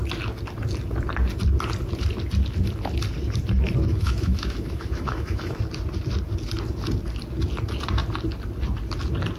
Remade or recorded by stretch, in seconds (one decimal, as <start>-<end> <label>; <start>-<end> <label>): 0.0-3.9 recorded; 3.9-5.6 remade; 5.6-9.4 recorded